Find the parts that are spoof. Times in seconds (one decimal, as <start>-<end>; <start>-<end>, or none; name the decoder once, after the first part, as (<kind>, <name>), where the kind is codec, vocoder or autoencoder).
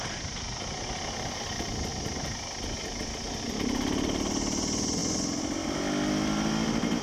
none